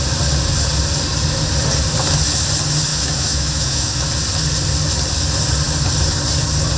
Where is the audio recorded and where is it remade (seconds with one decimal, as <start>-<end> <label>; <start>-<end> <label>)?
0.0-2.9 recorded; 2.9-4.1 remade; 4.1-6.8 recorded